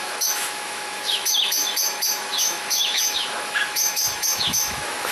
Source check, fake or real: fake